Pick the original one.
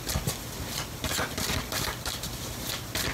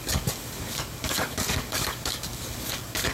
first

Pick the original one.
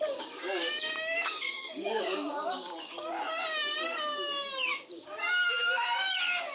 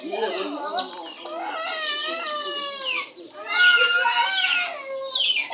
second